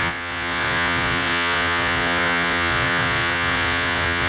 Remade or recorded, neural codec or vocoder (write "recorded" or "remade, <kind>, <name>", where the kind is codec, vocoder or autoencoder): remade, vocoder, Vocos